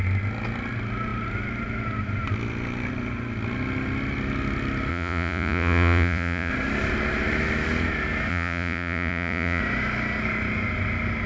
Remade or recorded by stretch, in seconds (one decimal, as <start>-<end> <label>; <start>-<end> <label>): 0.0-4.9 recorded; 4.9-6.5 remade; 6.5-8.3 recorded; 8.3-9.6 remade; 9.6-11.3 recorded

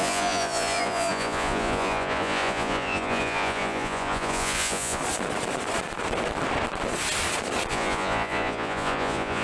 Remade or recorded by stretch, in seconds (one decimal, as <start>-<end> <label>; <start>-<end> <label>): 0.0-5.0 remade; 5.0-7.7 recorded; 7.7-9.4 remade

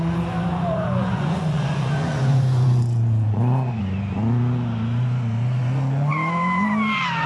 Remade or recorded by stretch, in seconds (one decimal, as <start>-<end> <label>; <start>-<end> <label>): 0.0-0.5 recorded; 0.5-3.8 remade; 3.8-7.3 recorded